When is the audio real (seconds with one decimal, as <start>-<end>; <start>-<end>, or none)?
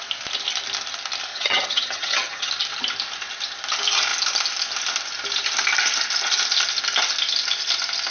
0.0-1.3; 2.5-8.1